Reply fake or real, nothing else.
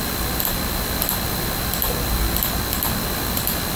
real